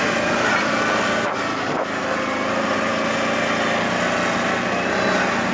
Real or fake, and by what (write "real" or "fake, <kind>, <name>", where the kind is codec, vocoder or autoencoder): real